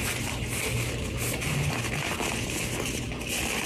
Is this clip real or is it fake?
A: real